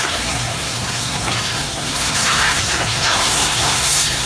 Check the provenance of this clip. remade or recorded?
remade